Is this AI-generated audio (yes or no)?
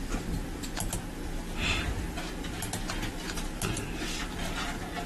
no